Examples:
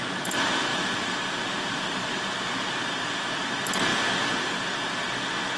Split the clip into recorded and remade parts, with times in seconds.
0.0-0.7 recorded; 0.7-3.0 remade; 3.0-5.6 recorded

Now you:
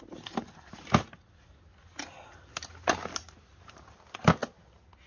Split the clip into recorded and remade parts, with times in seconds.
0.0-5.1 recorded

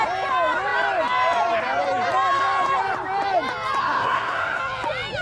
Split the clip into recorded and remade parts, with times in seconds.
0.0-3.8 recorded; 3.8-4.6 remade; 4.6-5.2 recorded

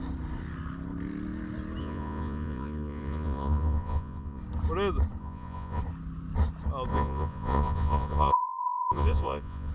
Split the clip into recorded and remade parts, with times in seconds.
0.0-1.8 recorded; 1.8-4.4 remade; 4.4-5.2 recorded; 5.2-5.8 remade; 5.8-6.9 recorded; 6.9-9.7 remade

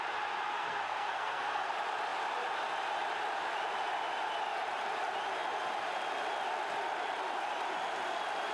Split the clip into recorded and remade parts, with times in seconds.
0.0-0.5 recorded; 0.5-1.7 remade; 1.7-8.5 recorded